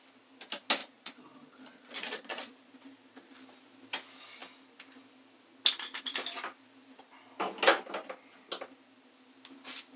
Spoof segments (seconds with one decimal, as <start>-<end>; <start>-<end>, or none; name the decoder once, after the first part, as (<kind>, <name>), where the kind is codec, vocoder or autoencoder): 0.8-2.5 (vocoder, Vocos)